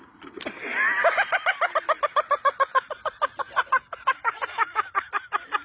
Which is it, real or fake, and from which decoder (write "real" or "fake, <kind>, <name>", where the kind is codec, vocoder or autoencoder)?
real